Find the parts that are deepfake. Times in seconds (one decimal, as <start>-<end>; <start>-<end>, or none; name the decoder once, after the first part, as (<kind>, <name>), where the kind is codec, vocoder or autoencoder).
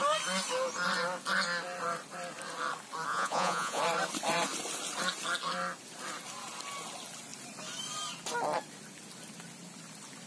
3.1-3.8 (vocoder, Vocos)